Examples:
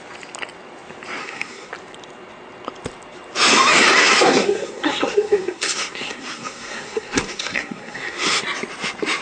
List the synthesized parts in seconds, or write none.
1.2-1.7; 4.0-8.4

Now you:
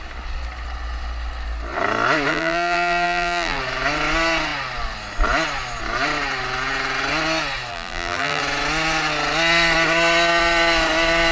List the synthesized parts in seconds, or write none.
2.3-3.6; 7.7-8.4